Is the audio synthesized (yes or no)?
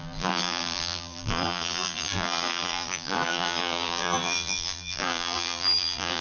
yes